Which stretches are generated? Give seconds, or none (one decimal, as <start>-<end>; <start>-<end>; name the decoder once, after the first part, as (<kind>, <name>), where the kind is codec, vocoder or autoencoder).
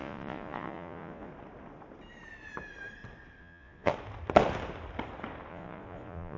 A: 0.0-1.3 (vocoder, Vocos); 3.4-3.9; 5.5-6.4